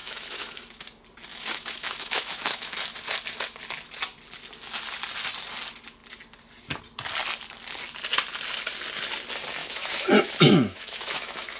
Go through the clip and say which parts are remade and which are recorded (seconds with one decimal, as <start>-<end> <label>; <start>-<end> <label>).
0.0-0.8 remade; 0.8-1.3 recorded; 1.3-2.8 remade; 2.8-9.6 recorded; 9.6-11.6 remade